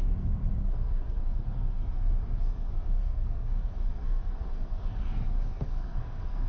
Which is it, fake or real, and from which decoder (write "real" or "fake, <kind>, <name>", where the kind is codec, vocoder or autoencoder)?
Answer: fake, codec, SNAC